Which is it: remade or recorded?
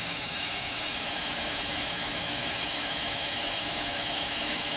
remade